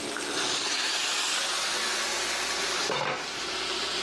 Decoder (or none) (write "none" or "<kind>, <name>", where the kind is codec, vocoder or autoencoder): none